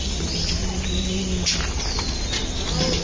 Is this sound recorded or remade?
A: recorded